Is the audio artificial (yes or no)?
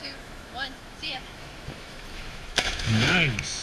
yes